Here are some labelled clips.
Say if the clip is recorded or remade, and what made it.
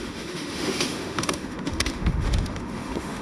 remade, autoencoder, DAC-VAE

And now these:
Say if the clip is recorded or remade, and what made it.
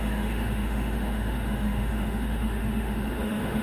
remade, autoencoder, DAC-VAE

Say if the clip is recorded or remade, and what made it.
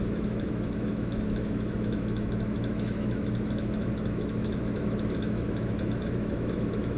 remade, autoencoder, DAC-VAE